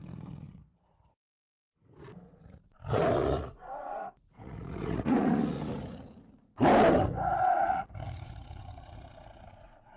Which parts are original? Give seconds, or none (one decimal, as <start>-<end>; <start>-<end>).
6.5-7.5